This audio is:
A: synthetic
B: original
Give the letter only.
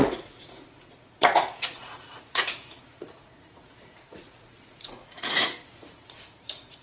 A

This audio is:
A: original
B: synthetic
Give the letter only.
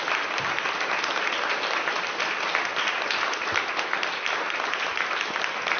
A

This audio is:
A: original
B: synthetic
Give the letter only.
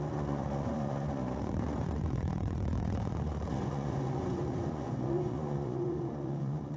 B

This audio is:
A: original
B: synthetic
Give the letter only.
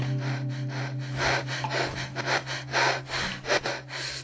A